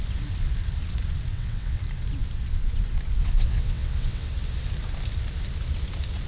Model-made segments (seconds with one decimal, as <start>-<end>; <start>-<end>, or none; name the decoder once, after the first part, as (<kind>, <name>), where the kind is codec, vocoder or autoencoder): 1.3-1.8 (vocoder, WaveNeXt); 3.2-4.3